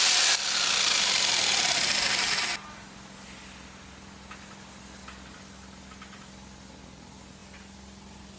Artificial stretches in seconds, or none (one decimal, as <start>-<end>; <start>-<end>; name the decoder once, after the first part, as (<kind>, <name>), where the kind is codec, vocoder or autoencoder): none